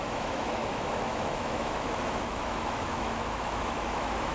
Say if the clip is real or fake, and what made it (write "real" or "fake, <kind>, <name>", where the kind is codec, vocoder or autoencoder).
fake, autoencoder, DAC-VAE